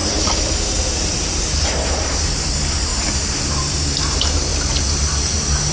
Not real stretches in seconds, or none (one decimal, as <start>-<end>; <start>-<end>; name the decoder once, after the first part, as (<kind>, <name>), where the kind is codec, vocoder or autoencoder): 0.0-2.9 (vocoder, BigVGAN v2); 3.5-4.5